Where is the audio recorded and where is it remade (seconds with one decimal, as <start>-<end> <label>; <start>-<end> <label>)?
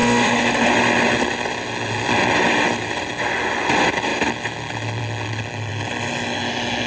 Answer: 0.0-0.7 remade; 0.7-6.9 recorded